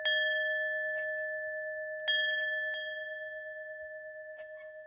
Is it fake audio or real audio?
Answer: real